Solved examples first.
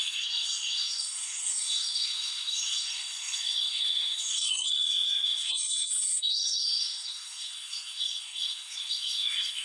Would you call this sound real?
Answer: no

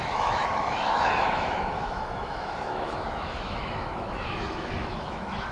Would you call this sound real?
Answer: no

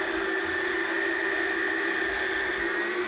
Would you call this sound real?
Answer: yes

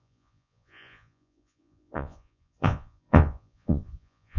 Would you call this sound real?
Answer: no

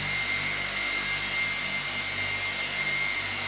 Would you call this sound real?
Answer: yes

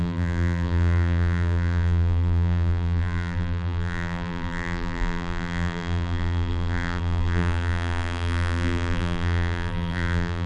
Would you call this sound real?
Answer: no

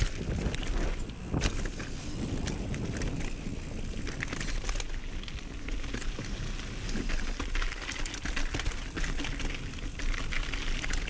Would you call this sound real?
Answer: yes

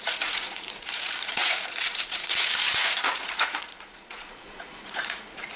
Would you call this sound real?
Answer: no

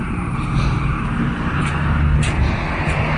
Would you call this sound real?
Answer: yes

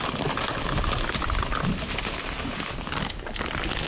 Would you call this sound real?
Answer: yes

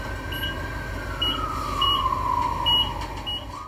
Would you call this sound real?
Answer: yes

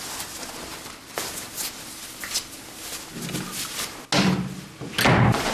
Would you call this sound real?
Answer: yes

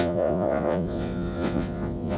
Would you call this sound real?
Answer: no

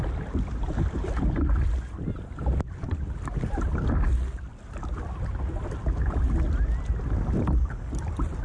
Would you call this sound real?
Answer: yes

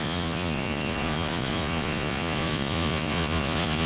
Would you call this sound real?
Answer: no